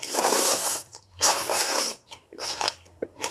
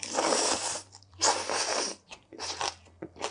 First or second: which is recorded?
second